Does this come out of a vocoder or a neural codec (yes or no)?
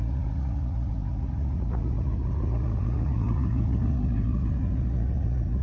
yes